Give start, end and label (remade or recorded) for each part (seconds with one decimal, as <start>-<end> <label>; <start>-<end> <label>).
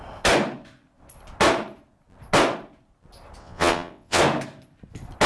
0.0-3.4 recorded; 3.4-4.2 remade; 4.2-5.3 recorded